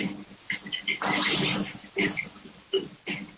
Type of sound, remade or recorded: recorded